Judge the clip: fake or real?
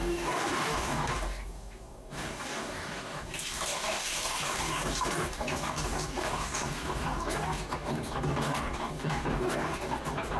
fake